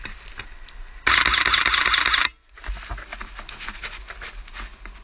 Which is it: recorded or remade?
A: recorded